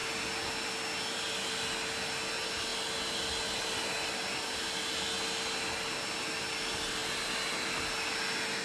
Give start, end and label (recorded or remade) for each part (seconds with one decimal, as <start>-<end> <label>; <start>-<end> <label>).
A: 0.0-8.6 recorded